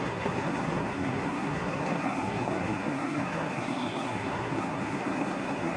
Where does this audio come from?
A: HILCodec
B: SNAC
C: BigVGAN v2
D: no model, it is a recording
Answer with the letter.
B